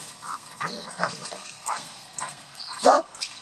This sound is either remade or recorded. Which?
remade